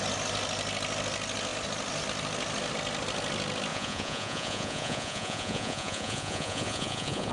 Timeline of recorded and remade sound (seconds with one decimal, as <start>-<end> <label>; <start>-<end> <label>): 0.0-3.7 recorded; 3.7-7.3 remade